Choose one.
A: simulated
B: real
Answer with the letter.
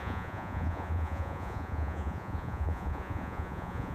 A